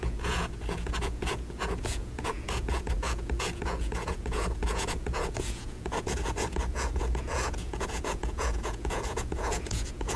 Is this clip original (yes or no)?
no